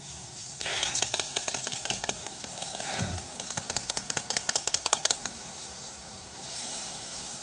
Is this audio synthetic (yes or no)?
yes